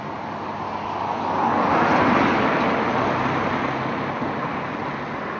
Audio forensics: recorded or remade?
recorded